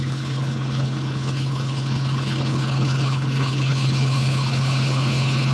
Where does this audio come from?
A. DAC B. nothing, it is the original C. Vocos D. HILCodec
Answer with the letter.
D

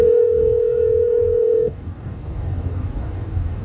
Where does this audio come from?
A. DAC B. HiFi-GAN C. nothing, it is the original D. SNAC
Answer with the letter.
A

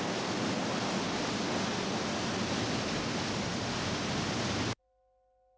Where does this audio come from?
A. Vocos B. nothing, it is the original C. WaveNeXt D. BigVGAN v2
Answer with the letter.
B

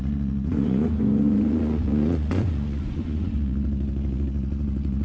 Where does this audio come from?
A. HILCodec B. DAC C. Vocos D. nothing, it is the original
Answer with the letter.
C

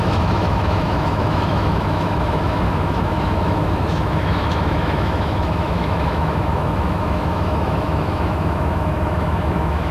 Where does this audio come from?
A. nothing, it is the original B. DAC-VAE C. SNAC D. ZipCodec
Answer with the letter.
B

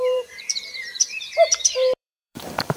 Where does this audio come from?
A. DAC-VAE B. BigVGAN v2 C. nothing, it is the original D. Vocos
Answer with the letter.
B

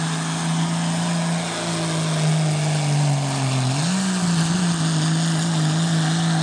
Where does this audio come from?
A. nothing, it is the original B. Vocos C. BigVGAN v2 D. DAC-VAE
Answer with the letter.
A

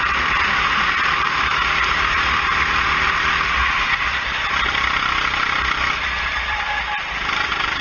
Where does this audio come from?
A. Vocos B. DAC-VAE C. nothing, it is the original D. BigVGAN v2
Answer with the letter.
D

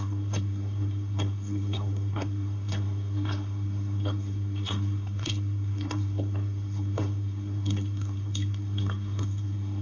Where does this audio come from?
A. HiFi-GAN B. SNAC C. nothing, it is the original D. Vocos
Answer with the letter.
B